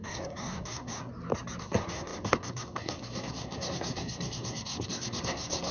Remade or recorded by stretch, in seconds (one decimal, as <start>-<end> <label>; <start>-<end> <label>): 0.0-1.1 remade; 1.1-1.6 recorded; 1.6-5.7 remade